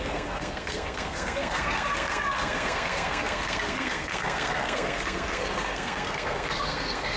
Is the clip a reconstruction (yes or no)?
yes